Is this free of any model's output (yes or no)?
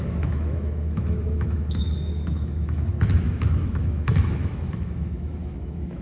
no